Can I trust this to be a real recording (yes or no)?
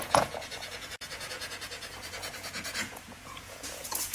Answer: no